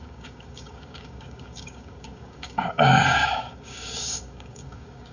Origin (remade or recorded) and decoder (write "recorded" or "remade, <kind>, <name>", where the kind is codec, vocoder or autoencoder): remade, codec, DAC